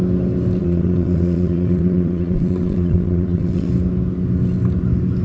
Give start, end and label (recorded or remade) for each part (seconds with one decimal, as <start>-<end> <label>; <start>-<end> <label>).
0.0-0.6 recorded; 0.6-3.7 remade; 3.7-5.2 recorded